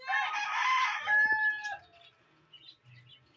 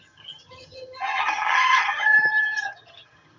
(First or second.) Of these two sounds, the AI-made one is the second